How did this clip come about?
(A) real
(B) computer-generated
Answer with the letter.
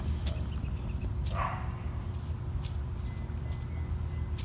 A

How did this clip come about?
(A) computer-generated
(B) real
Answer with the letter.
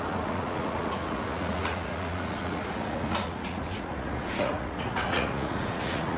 A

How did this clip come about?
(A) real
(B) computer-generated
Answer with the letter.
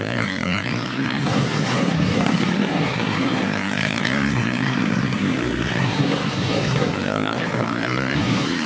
B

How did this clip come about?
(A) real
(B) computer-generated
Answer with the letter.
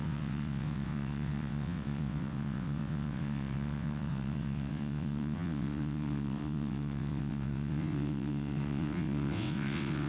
B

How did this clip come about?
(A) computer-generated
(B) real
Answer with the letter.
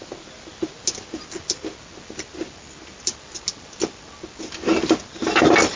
B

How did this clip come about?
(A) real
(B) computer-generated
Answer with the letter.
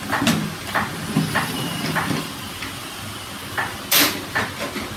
A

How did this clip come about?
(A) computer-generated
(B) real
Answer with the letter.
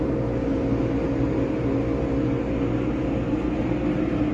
B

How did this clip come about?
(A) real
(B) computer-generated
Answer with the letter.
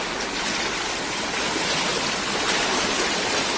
A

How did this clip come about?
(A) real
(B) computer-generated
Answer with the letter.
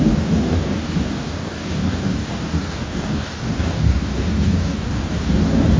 B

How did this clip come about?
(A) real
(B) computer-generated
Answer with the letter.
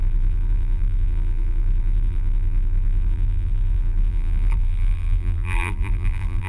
B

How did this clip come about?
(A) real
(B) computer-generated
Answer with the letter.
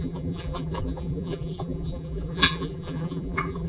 B